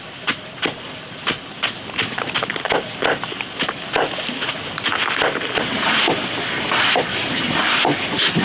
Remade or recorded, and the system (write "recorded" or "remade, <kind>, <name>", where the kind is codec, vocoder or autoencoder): recorded